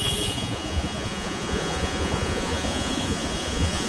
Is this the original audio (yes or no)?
no